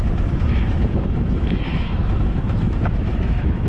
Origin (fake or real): fake